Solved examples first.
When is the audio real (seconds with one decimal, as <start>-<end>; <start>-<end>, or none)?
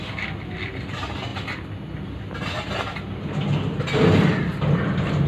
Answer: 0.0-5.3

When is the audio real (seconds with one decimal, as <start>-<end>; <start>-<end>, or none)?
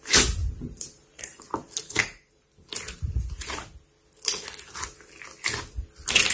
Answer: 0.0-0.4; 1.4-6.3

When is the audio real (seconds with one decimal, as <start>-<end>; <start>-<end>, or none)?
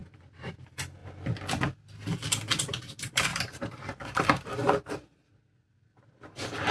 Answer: 0.5-3.3; 5.3-6.7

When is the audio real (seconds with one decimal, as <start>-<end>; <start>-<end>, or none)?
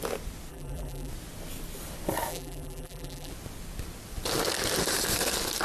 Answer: 0.0-0.5; 1.1-2.3; 3.3-5.6